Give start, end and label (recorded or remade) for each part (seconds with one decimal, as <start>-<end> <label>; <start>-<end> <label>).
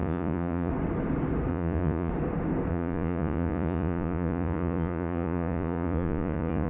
0.0-0.7 remade; 0.7-1.5 recorded; 1.5-2.1 remade; 2.1-2.7 recorded; 2.7-6.7 remade